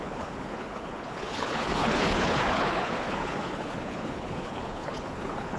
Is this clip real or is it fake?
fake